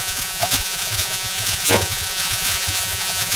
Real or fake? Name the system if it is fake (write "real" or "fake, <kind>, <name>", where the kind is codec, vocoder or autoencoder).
fake, vocoder, Vocos